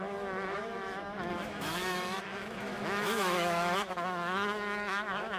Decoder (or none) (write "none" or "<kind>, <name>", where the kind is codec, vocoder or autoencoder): autoencoder, DAC-VAE